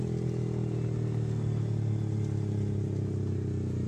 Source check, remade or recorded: recorded